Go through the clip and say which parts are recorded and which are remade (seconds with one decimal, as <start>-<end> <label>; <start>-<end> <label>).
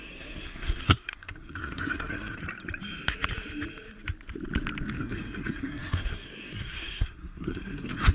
0.0-2.4 remade; 2.4-5.0 recorded; 5.0-8.1 remade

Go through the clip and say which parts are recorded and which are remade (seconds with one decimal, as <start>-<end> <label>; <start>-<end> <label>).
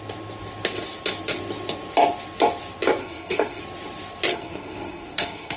0.0-3.0 recorded; 3.0-3.6 remade; 3.6-4.3 recorded; 4.3-5.6 remade